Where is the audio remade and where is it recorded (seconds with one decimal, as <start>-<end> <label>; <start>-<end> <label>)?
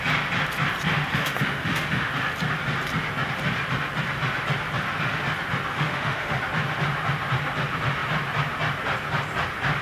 0.0-1.1 recorded; 1.1-2.1 remade; 2.1-5.7 recorded; 5.7-6.4 remade; 6.4-9.8 recorded